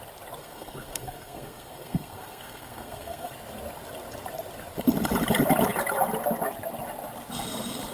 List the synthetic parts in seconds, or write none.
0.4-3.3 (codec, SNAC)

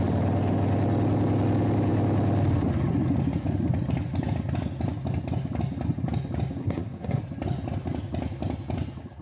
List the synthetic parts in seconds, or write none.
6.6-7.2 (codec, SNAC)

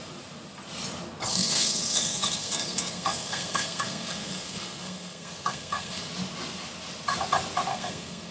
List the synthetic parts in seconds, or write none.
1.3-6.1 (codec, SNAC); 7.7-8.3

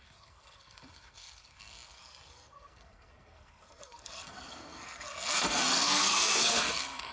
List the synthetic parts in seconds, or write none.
0.0-7.1 (codec, SNAC)

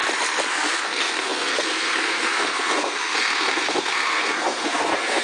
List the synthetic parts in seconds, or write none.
0.5-5.2 (codec, SNAC)

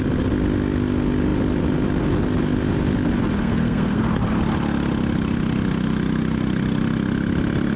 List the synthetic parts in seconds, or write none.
3.4-4.1 (codec, SNAC)

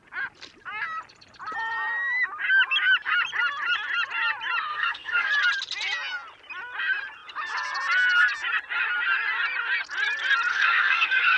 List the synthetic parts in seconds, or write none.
4.7-5.3 (codec, SNAC); 10.5-11.4